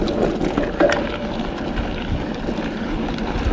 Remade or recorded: recorded